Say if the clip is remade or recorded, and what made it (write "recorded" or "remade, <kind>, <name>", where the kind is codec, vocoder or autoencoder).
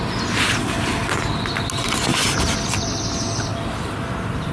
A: recorded